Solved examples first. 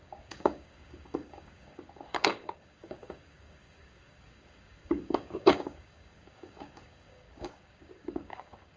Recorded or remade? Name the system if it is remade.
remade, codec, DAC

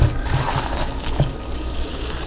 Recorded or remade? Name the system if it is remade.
remade, codec, DAC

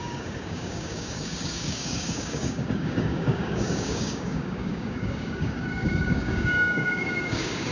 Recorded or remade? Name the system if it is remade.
remade, codec, DAC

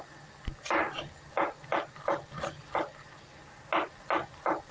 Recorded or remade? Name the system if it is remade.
recorded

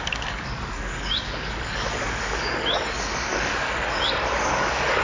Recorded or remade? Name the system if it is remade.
remade, codec, DAC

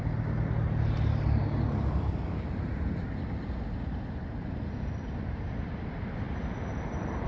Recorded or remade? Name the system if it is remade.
recorded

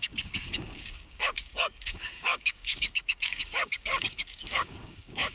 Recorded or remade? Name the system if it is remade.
remade, codec, DAC